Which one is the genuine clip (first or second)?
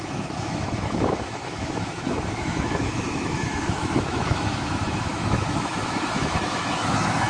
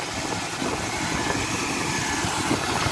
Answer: second